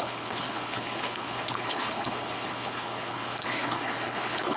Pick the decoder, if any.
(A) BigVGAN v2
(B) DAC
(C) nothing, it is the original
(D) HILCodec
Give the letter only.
D